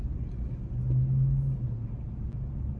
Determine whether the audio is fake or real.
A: real